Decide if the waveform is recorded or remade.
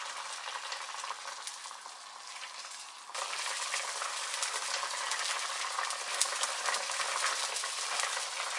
recorded